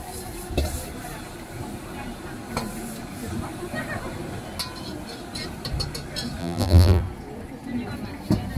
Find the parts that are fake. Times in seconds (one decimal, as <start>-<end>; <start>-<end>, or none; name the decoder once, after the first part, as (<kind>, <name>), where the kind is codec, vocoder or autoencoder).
6.4-7.0 (vocoder, BigVGAN v2)